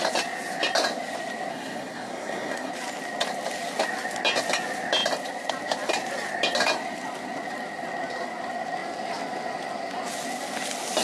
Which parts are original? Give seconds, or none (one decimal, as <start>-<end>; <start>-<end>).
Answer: 0.0-1.5; 2.7-11.0